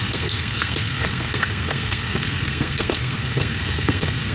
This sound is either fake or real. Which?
fake